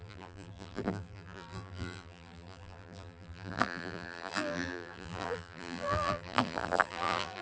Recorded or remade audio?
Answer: remade